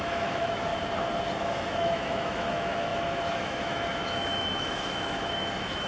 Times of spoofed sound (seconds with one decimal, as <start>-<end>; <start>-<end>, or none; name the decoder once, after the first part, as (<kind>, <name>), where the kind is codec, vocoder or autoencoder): 0.0-0.7 (autoencoder, DAC-VAE); 1.4-5.9